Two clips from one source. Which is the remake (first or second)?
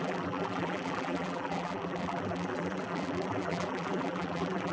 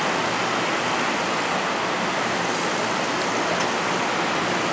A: first